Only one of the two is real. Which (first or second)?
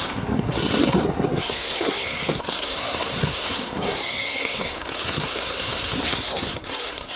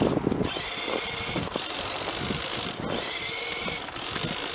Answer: second